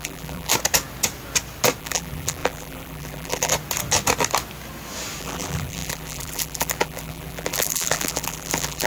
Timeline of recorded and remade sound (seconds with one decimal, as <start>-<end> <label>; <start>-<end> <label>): 0.0-0.5 remade; 0.5-1.8 recorded; 1.8-3.5 remade; 3.5-5.2 recorded; 5.2-8.9 remade